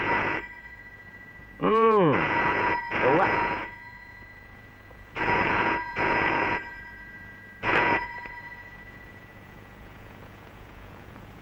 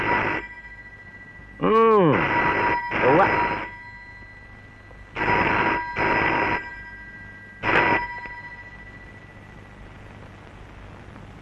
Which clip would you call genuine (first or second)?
second